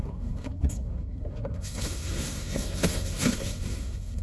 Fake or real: fake